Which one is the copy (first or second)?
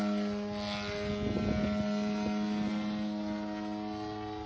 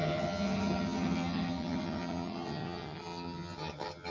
second